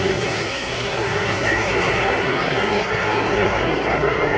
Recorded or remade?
remade